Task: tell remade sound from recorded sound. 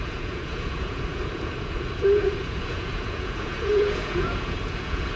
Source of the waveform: remade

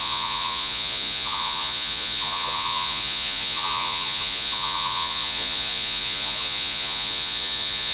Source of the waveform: remade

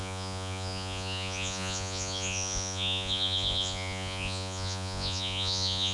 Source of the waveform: remade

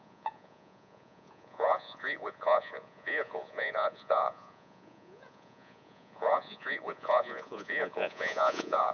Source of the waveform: remade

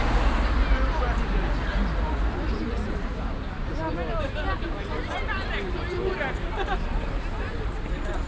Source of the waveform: recorded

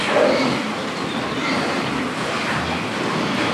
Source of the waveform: recorded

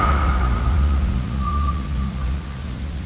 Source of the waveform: remade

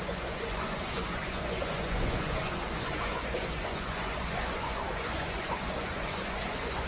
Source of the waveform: remade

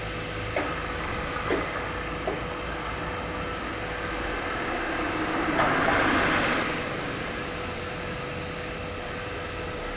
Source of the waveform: recorded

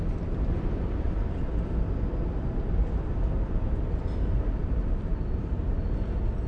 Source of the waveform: recorded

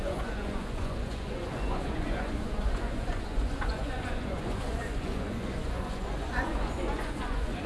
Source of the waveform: remade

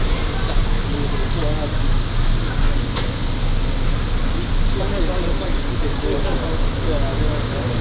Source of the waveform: recorded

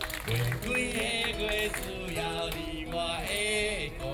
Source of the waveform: recorded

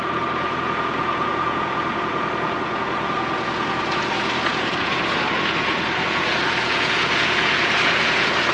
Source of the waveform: remade